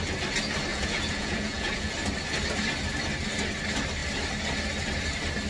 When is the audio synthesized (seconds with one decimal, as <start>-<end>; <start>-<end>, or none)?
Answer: 0.7-1.9